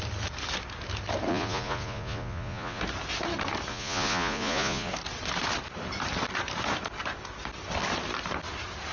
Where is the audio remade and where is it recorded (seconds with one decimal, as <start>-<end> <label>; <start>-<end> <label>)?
0.0-1.3 recorded; 1.3-2.8 remade; 2.8-3.7 recorded; 3.7-4.9 remade; 4.9-8.9 recorded